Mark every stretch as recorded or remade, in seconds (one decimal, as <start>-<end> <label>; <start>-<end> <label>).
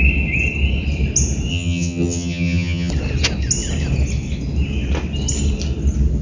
0.0-1.5 recorded; 1.5-2.9 remade; 2.9-6.2 recorded